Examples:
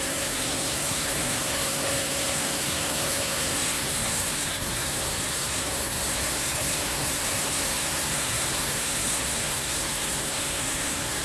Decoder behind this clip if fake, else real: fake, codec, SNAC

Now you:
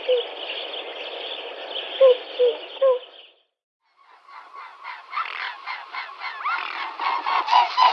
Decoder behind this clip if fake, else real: real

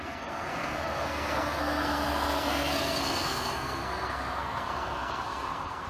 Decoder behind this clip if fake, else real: fake, codec, SNAC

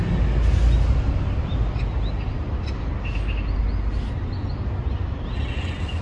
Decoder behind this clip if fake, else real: real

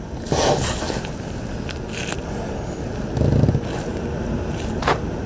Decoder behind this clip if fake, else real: real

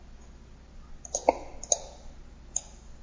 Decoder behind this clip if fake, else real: real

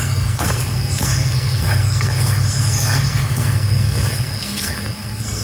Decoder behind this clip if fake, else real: fake, codec, SNAC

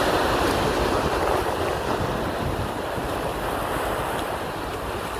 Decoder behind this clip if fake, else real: real